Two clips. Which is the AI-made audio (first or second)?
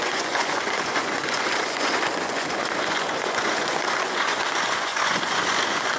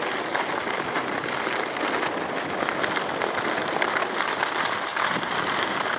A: first